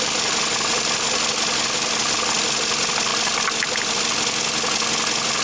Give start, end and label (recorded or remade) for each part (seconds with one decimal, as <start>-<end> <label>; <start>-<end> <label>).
0.0-5.4 recorded